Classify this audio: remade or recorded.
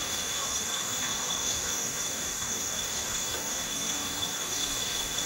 remade